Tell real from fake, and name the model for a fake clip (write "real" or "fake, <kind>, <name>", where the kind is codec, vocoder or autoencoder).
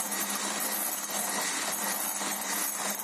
real